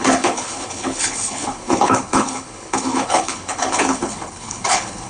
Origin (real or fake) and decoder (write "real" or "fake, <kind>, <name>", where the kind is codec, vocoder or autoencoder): fake, codec, HILCodec